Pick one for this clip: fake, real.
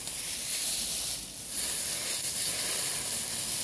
real